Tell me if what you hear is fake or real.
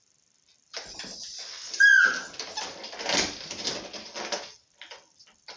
real